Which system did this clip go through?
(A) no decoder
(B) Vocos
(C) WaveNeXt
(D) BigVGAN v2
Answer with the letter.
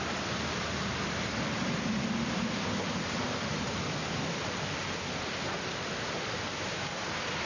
A